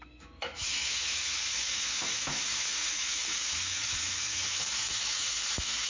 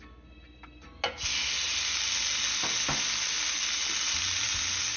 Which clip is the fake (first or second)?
first